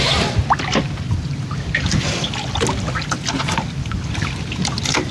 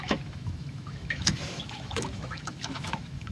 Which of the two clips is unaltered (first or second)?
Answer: first